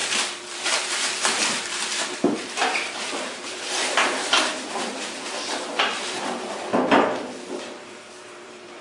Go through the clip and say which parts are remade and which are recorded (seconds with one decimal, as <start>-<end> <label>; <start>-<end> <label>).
0.0-6.7 remade; 6.7-7.6 recorded; 7.6-8.8 remade